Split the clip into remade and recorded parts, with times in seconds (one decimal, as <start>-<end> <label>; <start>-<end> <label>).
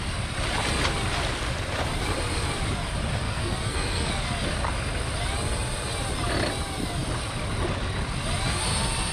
0.0-3.2 recorded; 3.2-4.1 remade; 4.1-9.1 recorded